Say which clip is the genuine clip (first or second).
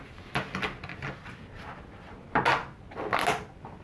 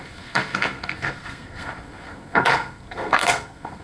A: first